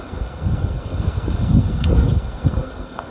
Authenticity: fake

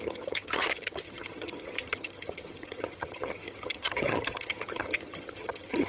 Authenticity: fake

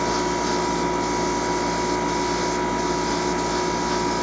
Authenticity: real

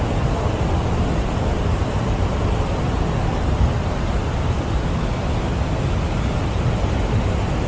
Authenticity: real